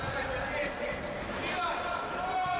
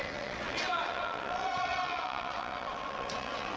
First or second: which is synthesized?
second